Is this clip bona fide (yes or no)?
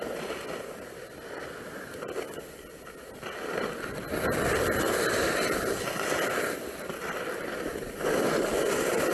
yes